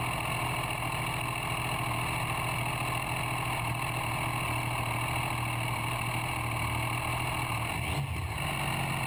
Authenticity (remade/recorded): recorded